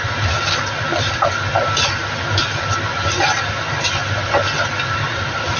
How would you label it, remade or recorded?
recorded